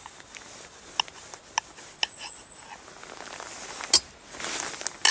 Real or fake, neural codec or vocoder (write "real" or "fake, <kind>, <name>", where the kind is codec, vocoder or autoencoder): real